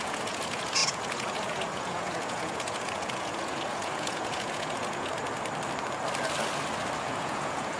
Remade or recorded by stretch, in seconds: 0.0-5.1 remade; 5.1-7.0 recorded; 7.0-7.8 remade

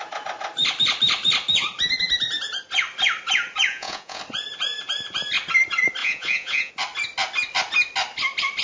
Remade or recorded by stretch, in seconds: 0.0-3.7 recorded; 3.7-4.2 remade; 4.2-6.0 recorded; 6.0-6.7 remade; 6.7-8.6 recorded

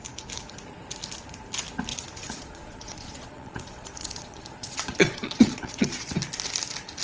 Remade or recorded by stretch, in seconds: 0.0-1.9 recorded; 1.9-6.1 remade; 6.1-7.0 recorded